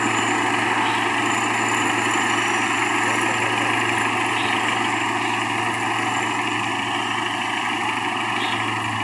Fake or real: real